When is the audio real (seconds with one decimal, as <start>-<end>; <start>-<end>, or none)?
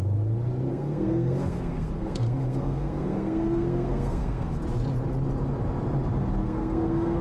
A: 0.0-0.7; 4.6-6.4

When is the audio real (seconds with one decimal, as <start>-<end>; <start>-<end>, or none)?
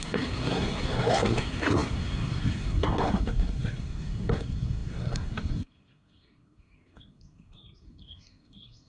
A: none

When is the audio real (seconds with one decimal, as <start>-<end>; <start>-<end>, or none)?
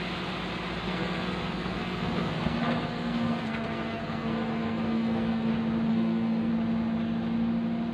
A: 0.0-0.8; 5.5-5.9; 6.5-7.9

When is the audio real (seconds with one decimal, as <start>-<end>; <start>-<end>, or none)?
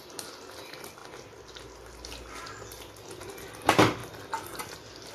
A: 0.0-5.1